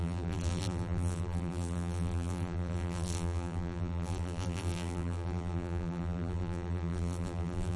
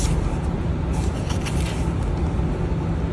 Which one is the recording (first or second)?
second